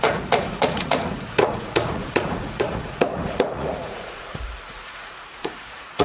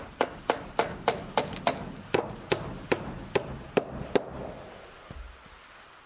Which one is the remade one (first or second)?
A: first